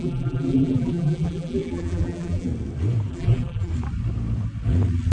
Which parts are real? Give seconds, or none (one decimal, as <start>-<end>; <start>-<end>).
2.5-3.1; 3.7-5.1